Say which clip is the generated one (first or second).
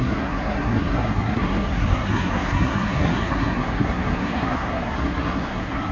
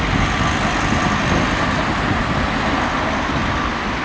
first